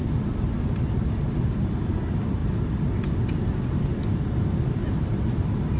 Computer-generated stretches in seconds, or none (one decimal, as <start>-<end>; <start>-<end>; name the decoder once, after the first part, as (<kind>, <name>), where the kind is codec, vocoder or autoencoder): none